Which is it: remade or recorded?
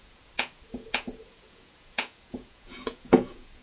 remade